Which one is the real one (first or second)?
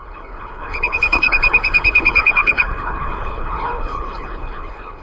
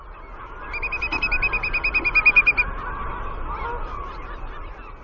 second